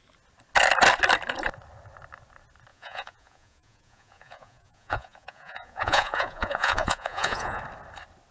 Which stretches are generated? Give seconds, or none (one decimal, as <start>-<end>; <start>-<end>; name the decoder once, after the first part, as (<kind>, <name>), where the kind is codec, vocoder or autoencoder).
2.7-7.6 (vocoder, Vocos)